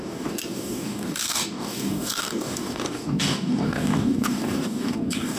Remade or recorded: remade